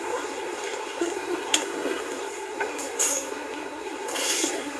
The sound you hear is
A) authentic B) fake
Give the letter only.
B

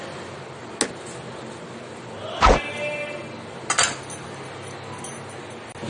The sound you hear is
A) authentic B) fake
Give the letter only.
A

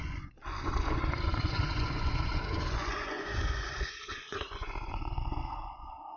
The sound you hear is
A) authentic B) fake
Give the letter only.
B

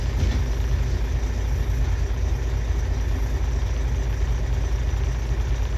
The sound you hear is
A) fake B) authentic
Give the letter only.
B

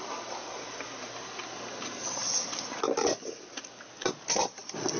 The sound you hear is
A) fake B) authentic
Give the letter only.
B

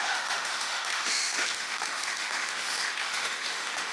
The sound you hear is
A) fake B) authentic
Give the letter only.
A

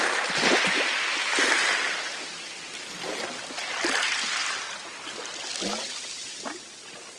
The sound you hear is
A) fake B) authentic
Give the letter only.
B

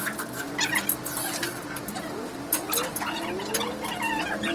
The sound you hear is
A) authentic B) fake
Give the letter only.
A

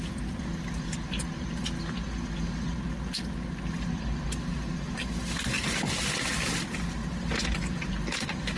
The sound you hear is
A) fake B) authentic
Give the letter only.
B